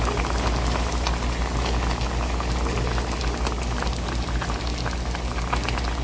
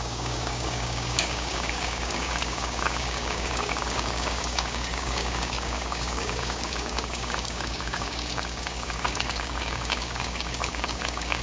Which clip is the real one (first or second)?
first